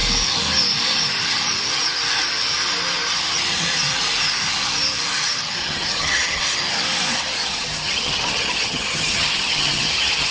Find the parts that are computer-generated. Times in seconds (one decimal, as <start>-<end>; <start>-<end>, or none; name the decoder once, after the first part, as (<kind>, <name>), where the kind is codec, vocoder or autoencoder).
5.6-6.4 (vocoder, HiFi-GAN); 7.4-10.3